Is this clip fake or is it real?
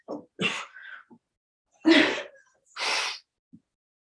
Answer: real